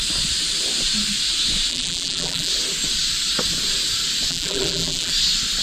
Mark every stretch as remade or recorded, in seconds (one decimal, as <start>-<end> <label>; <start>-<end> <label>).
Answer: 0.0-1.7 recorded; 1.7-2.5 remade; 2.5-4.3 recorded; 4.3-5.1 remade; 5.1-5.6 recorded